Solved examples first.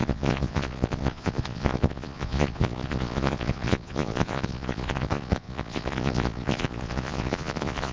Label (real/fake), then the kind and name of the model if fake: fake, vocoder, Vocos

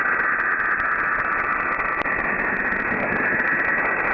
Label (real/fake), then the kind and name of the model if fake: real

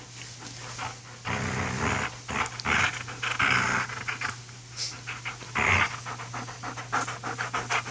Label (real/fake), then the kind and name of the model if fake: real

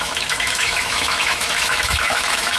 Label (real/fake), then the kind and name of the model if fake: fake, autoencoder, DAC-VAE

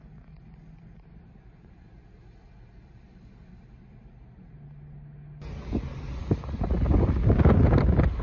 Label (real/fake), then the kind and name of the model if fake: real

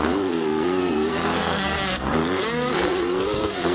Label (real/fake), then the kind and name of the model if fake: fake, codec, SNAC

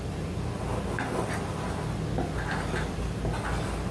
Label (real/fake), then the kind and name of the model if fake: real